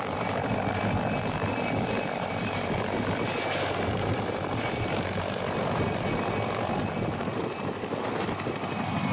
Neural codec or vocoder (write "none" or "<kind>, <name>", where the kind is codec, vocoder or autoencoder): none